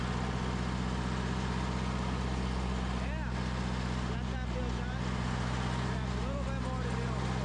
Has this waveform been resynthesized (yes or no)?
no